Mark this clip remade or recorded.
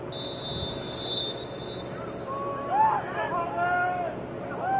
recorded